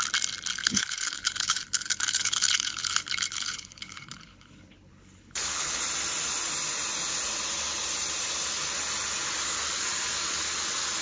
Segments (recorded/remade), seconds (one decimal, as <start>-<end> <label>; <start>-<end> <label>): 0.0-0.6 recorded; 0.6-5.8 remade; 5.8-11.0 recorded